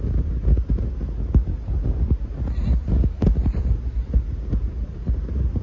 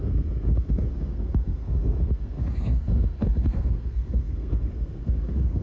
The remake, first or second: second